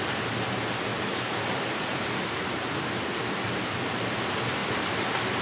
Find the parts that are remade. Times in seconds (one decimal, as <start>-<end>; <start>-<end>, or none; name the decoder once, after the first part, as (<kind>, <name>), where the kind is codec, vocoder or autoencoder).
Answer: 0.9-3.7 (vocoder, BigVGAN v2)